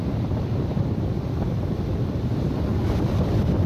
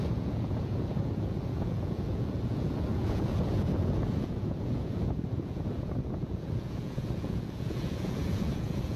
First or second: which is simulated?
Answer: second